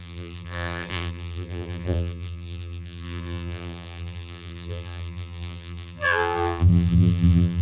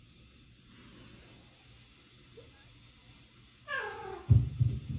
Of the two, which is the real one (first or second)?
second